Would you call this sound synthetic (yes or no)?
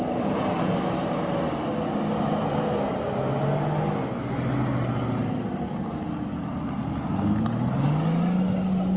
no